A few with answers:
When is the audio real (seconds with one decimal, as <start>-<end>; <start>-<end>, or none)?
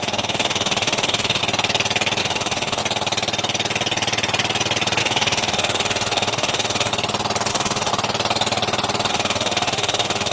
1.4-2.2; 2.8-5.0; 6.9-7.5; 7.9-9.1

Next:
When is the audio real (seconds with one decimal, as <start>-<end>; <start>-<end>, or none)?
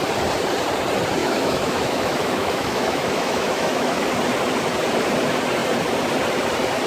0.0-1.2; 4.1-6.9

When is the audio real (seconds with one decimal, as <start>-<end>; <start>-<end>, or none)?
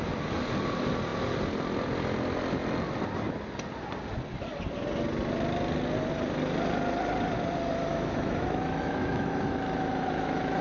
0.0-7.9